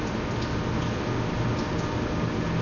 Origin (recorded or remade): recorded